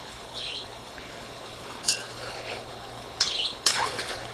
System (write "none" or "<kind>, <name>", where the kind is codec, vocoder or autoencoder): codec, HILCodec